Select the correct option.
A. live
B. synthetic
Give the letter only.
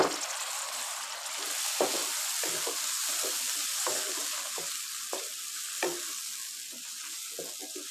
A